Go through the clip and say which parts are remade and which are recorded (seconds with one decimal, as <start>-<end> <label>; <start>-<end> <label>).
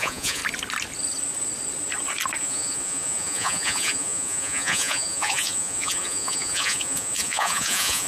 0.0-0.4 remade; 0.4-2.4 recorded; 2.4-8.1 remade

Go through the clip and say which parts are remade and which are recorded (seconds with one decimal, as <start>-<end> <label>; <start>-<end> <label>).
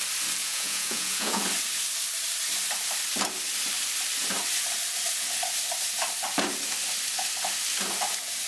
0.0-0.4 recorded; 0.4-1.4 remade; 1.4-8.5 recorded